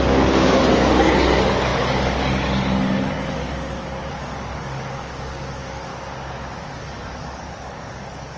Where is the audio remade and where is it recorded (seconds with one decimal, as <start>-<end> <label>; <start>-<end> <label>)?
0.0-5.9 remade; 5.9-6.6 recorded; 6.6-8.4 remade